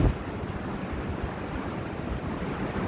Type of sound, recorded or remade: recorded